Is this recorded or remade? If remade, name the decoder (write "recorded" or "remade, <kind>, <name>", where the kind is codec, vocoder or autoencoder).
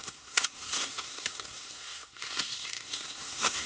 remade, codec, SNAC